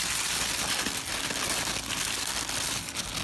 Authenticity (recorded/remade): recorded